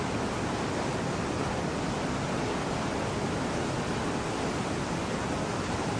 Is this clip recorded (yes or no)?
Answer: yes